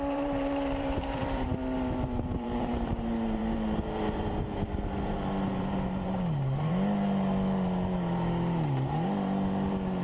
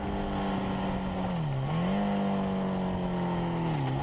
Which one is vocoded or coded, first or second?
first